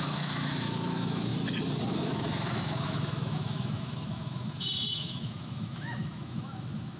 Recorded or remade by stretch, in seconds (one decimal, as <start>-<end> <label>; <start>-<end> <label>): 0.0-1.3 remade; 1.3-1.9 recorded; 1.9-7.0 remade